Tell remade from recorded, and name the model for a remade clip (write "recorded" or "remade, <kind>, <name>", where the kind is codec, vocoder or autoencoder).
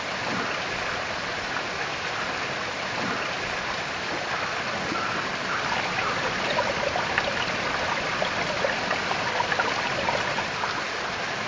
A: recorded